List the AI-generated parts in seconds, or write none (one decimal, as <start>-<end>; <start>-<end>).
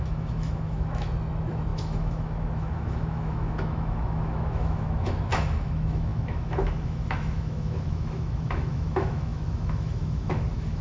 0.0-10.8